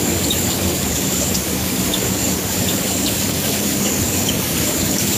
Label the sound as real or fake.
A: fake